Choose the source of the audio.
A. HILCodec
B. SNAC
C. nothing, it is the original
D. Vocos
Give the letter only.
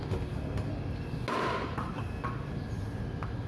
C